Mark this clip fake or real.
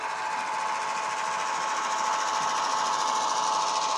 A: real